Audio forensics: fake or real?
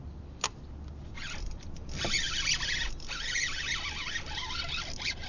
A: real